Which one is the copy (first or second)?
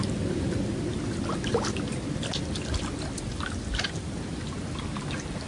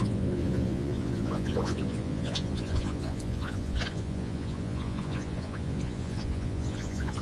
second